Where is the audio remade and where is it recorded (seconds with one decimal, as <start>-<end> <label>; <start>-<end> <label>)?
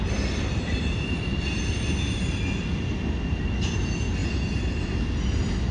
0.0-5.7 recorded